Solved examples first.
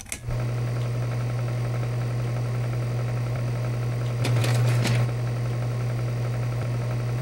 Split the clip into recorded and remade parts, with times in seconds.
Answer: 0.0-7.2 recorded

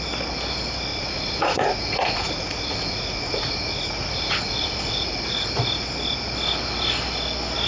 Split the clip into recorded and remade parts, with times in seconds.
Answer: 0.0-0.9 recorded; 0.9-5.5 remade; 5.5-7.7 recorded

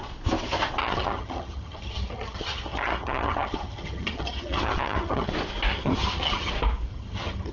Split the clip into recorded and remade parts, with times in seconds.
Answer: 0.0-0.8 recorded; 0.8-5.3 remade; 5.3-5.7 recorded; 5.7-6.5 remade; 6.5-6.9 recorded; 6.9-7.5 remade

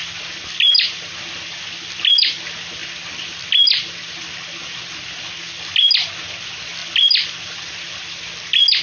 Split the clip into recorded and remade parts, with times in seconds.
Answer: 0.0-8.8 recorded